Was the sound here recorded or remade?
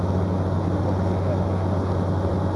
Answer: recorded